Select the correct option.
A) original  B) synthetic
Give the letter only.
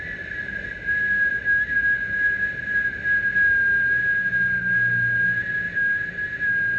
A